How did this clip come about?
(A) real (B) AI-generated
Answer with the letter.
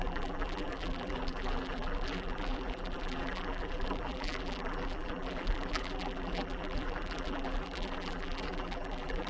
B